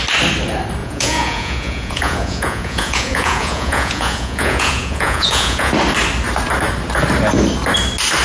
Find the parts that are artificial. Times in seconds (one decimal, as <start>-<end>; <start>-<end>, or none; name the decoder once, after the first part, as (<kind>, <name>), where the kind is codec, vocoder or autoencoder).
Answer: 0.8-5.7 (vocoder, Vocos)